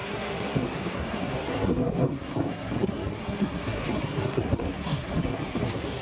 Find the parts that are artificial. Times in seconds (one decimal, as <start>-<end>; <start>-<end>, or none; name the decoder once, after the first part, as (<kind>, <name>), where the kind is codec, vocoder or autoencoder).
0.0-6.0 (codec, SNAC)